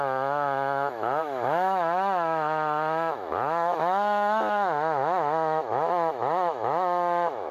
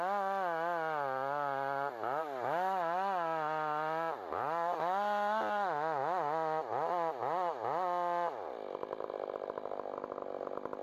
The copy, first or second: first